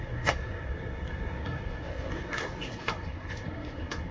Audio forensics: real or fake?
fake